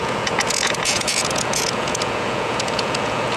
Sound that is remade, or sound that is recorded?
remade